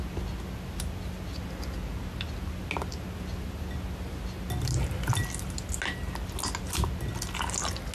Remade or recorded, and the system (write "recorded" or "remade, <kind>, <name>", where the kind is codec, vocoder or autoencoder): recorded